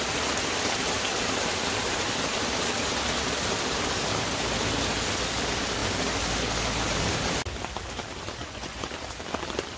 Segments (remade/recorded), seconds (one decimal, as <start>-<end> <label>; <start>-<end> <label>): 0.0-8.4 recorded; 8.4-8.9 remade; 8.9-9.8 recorded